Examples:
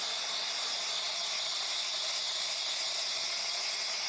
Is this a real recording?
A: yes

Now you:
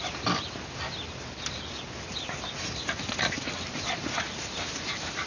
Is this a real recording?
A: yes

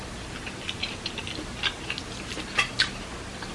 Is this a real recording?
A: no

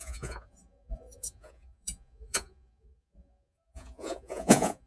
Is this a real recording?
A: no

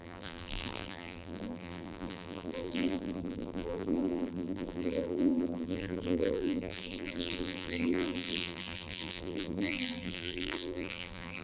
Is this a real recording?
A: no